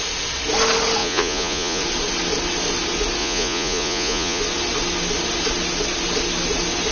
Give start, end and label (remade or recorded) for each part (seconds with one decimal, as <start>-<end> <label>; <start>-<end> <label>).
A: 0.0-1.0 recorded; 1.0-1.8 remade; 1.8-3.2 recorded; 3.2-4.4 remade; 4.4-6.9 recorded